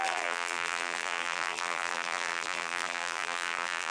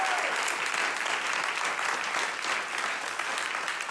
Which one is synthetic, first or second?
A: first